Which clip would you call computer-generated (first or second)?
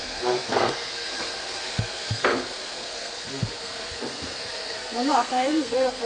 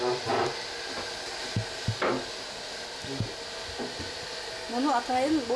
first